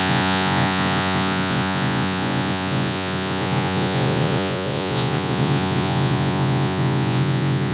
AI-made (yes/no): yes